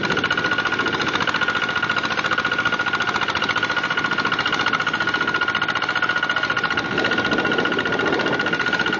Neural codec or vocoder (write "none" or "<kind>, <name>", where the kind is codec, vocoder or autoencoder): none